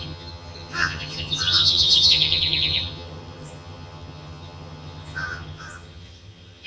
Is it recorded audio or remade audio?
remade